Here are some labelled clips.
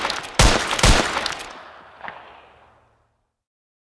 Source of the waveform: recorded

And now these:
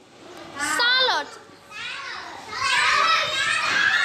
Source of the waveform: recorded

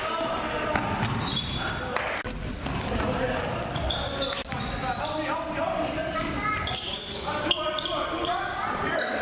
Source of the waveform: recorded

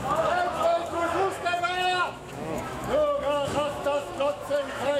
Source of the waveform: remade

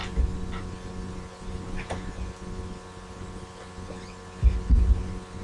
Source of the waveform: recorded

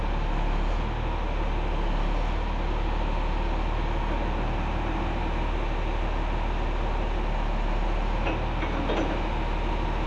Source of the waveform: recorded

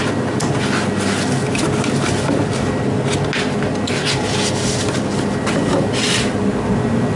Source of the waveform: recorded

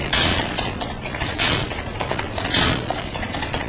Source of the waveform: remade